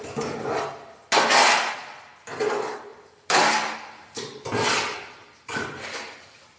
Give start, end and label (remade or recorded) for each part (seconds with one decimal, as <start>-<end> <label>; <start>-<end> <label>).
0.0-2.9 recorded; 2.9-3.4 remade; 3.4-5.2 recorded; 5.2-6.6 remade